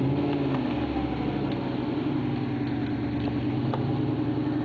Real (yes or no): yes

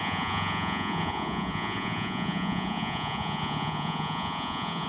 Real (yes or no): no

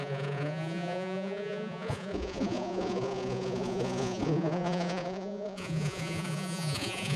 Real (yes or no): no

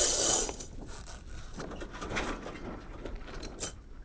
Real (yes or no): yes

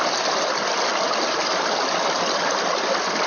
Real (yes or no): yes